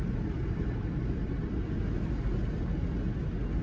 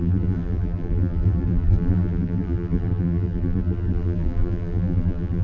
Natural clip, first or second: first